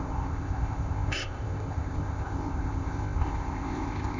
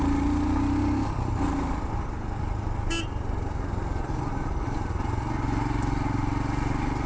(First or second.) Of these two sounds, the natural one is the second